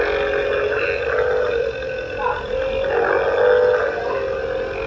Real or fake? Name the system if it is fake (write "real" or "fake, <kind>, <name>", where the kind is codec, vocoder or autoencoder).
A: real